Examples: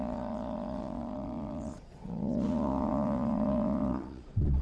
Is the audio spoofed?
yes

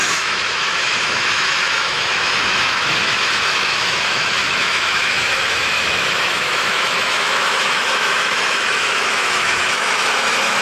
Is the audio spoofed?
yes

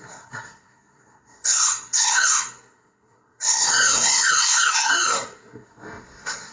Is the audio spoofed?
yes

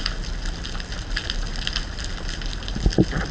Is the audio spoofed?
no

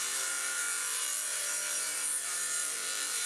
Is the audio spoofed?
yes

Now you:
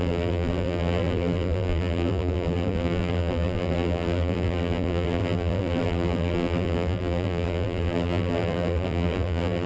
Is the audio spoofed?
yes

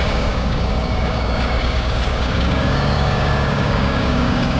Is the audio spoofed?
yes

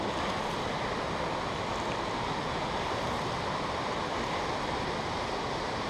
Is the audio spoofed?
no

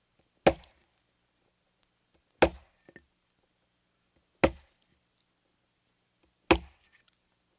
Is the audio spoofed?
no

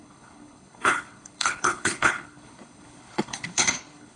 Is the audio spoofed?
yes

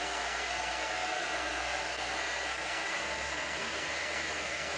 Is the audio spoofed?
yes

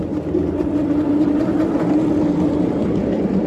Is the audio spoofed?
no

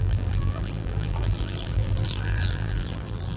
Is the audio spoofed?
yes